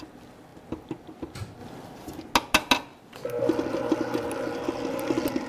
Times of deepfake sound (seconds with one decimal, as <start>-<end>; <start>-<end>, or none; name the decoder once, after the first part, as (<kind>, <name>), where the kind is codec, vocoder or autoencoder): 1.6-2.2 (vocoder, BigVGAN v2); 2.9-4.2